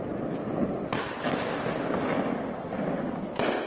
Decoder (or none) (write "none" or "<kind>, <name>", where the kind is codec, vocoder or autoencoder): none